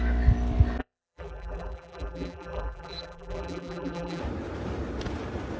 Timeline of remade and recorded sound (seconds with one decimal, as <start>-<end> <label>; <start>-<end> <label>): 0.0-0.8 recorded; 0.8-4.2 remade; 4.2-5.6 recorded